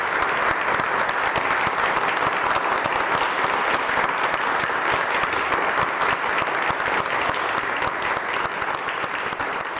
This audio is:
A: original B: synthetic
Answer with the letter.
A